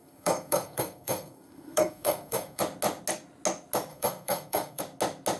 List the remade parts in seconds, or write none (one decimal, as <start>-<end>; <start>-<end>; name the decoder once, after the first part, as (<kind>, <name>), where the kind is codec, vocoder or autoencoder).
0.0-2.6 (codec, SNAC); 3.9-4.8